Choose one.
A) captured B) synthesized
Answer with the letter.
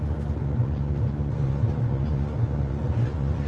B